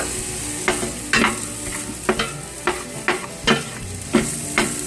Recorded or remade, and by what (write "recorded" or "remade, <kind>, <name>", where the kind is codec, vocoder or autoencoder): recorded